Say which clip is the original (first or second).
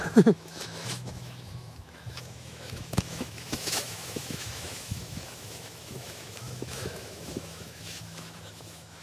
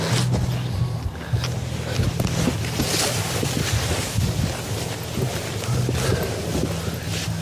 second